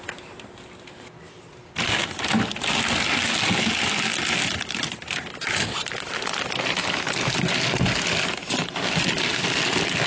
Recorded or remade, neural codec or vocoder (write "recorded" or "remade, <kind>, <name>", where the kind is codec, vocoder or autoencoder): recorded